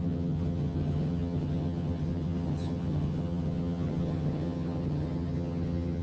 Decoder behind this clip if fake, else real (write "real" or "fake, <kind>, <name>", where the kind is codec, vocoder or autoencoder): fake, vocoder, HiFi-GAN